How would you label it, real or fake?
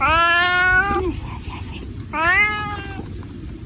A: real